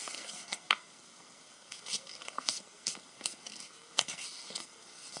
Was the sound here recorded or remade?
remade